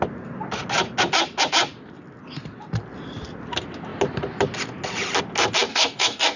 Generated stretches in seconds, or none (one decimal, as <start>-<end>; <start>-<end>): 5.7-6.4